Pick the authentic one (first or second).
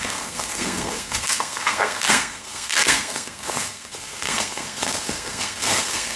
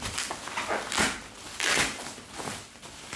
second